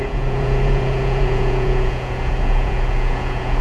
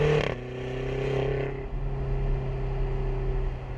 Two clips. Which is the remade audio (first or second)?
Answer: first